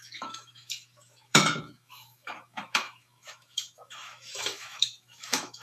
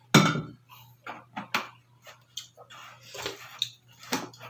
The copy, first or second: first